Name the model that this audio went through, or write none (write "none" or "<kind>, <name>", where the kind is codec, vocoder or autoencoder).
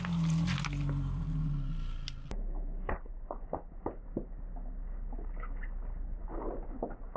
none